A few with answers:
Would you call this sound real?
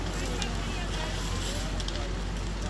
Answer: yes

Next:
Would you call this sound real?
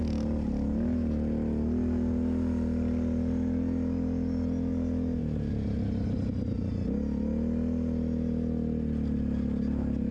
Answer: yes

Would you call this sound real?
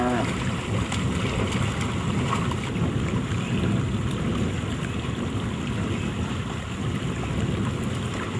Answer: yes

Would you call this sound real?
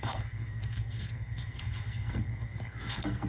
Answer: no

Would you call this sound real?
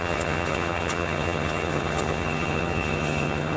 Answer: no